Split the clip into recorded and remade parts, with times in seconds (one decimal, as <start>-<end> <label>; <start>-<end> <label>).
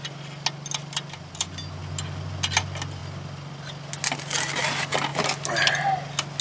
0.0-6.4 recorded